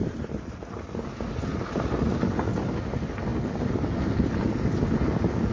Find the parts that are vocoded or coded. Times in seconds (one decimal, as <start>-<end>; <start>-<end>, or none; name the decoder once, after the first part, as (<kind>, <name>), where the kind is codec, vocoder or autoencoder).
0.0-0.6 (vocoder, BigVGAN v2)